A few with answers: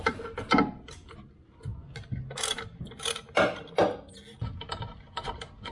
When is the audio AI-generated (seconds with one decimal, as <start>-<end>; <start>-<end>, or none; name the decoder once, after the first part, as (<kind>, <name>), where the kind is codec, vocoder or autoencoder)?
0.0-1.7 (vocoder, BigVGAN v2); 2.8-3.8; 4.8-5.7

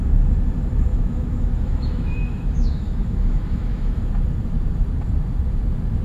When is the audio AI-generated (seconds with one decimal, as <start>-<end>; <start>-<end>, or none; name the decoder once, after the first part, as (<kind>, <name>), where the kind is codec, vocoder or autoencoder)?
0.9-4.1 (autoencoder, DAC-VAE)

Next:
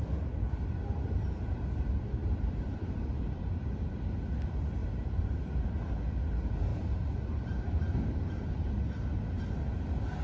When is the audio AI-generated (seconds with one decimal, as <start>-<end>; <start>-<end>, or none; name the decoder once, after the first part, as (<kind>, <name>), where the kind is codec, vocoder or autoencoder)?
2.2-3.9 (vocoder, BigVGAN v2); 4.8-5.5; 6.7-8.3

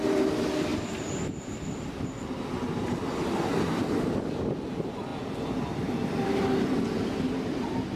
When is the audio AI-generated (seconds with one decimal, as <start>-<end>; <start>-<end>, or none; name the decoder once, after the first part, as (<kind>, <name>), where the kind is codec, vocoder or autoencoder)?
none

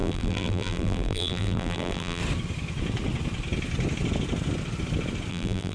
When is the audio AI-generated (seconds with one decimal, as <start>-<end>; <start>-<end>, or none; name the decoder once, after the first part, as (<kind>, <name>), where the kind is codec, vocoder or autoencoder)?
0.0-2.2 (vocoder, BigVGAN v2); 5.3-5.7

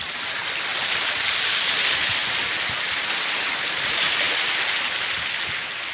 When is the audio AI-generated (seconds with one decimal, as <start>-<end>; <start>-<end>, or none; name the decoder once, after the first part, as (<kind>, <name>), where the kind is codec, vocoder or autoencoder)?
none

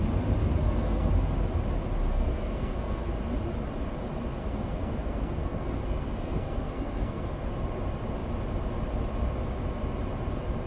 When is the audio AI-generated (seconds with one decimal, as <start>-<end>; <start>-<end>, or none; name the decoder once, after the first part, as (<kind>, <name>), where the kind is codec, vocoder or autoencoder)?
0.4-1.1 (codec, SNAC); 2.1-3.0; 4.4-7.5